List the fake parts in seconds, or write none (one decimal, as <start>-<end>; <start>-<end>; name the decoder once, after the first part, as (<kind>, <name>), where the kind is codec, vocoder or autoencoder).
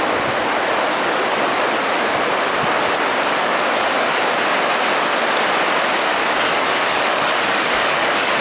0.9-1.6 (codec, DAC); 3.4-4.2; 6.1-8.4